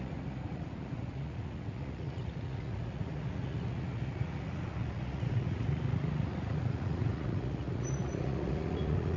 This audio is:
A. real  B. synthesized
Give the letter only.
B